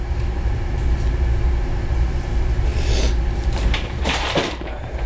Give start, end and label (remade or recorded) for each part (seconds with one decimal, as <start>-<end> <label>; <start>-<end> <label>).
0.0-2.7 remade; 2.7-3.4 recorded; 3.4-5.1 remade